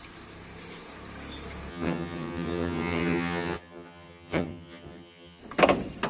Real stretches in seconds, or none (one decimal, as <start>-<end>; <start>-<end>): 0.0-1.7; 5.4-6.1